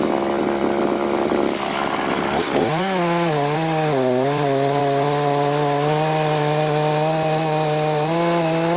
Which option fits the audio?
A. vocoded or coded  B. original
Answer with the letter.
B